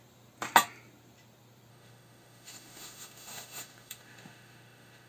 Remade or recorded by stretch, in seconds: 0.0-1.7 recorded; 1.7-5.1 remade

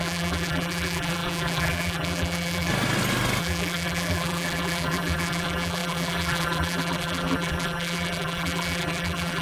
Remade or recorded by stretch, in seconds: 0.0-2.7 remade; 2.7-3.4 recorded; 3.4-9.4 remade

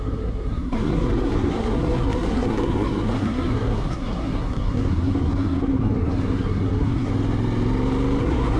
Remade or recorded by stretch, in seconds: 0.0-7.1 remade; 7.1-8.2 recorded; 8.2-8.6 remade

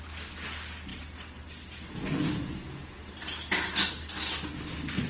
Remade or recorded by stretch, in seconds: 0.0-5.1 recorded

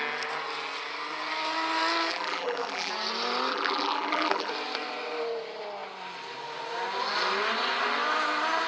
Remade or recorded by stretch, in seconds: 0.0-2.1 recorded; 2.1-2.9 remade; 2.9-3.5 recorded; 3.5-4.5 remade; 4.5-8.7 recorded